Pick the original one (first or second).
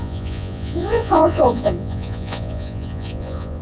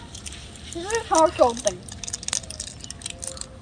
second